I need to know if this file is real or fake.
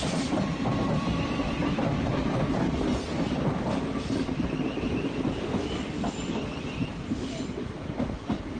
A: real